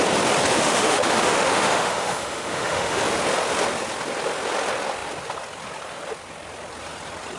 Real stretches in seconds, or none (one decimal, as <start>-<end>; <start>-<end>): 0.0-0.5; 3.0-7.4